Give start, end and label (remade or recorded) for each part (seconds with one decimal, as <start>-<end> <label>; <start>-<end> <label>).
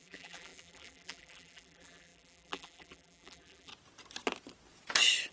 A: 0.0-3.7 remade; 3.7-5.3 recorded